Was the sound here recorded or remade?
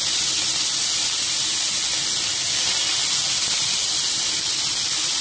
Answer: recorded